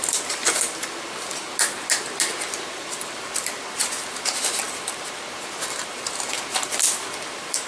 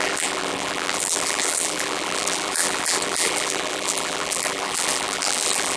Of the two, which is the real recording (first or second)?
first